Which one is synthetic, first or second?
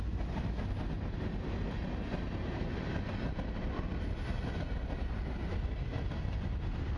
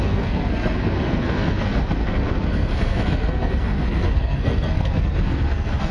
second